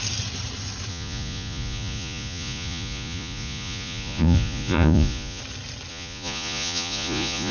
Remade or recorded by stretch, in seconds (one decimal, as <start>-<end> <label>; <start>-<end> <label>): 0.0-0.9 recorded; 0.9-5.4 remade; 5.4-5.9 recorded; 5.9-7.5 remade